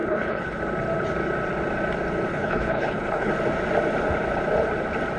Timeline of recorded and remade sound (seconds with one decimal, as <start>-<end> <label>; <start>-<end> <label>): 0.0-0.6 remade; 0.6-2.3 recorded; 2.3-3.3 remade; 3.3-5.2 recorded